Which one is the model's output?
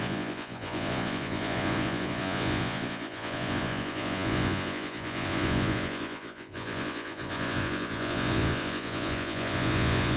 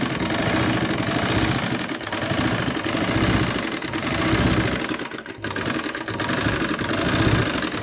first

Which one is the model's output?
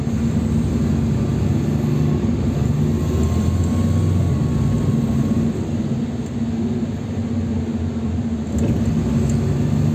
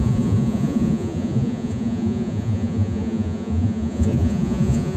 second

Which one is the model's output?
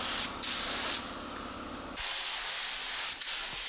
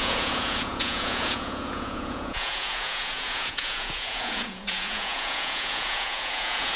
second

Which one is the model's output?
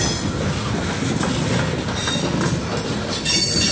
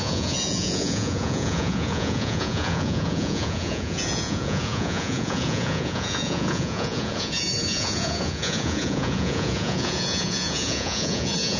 second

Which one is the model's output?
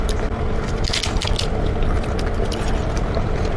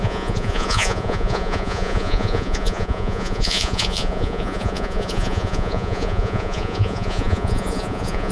second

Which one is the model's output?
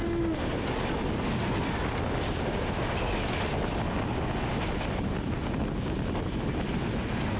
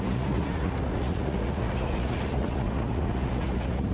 second